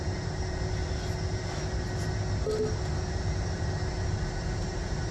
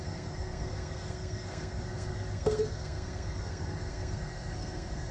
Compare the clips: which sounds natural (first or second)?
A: first